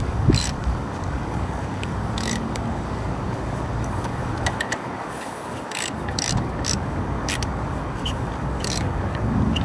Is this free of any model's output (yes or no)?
no